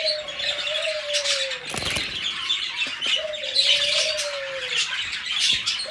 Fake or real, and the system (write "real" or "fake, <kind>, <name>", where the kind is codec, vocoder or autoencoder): real